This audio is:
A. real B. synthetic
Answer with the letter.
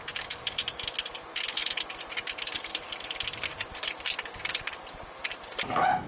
B